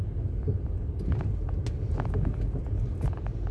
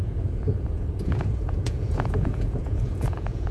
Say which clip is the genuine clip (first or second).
first